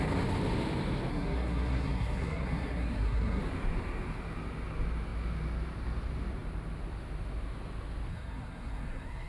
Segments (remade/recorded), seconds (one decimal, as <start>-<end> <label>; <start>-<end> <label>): 0.0-1.1 recorded; 1.1-3.4 remade; 3.4-8.1 recorded; 8.1-9.3 remade